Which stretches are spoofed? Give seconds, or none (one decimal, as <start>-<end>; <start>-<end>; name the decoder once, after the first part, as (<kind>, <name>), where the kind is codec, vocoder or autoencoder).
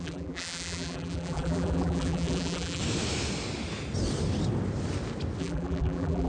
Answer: 0.0-2.8 (vocoder, BigVGAN v2); 5.4-6.3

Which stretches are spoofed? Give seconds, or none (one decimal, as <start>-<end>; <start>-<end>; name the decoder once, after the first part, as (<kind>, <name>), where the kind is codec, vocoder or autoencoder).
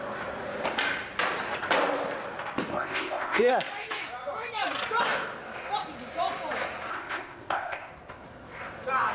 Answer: 2.7-3.5 (codec, ZipCodec); 6.9-7.9